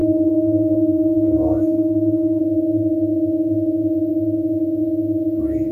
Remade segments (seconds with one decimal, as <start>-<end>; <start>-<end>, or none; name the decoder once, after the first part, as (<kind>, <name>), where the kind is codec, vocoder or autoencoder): 0.0-2.4 (codec, SNAC)